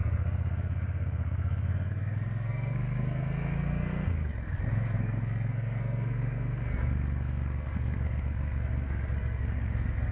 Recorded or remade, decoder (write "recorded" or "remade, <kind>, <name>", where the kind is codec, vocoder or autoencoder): remade, codec, SNAC